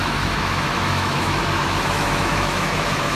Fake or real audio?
fake